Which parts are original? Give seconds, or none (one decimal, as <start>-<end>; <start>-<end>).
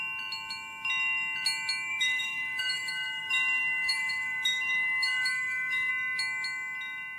0.0-1.9; 5.9-7.2